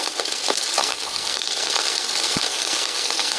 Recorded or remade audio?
remade